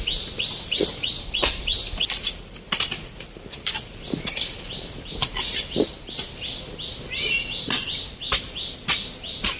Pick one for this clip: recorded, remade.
remade